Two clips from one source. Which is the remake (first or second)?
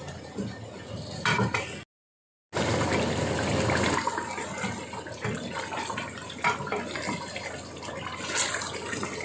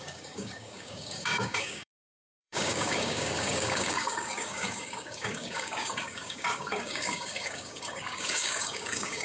second